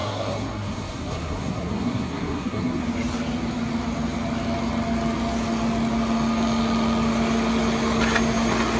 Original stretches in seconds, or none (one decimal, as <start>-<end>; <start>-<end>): 2.8-8.8